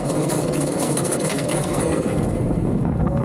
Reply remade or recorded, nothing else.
remade